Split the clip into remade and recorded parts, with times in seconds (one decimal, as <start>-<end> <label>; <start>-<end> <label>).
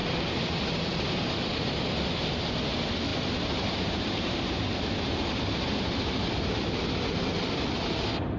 0.0-1.9 remade; 1.9-3.1 recorded; 3.1-5.1 remade; 5.1-8.4 recorded